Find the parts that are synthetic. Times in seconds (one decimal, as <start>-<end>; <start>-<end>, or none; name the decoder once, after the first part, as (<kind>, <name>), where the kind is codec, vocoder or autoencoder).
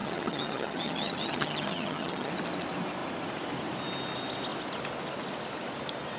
0.0-2.3 (vocoder, HiFi-GAN)